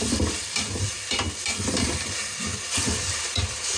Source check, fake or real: fake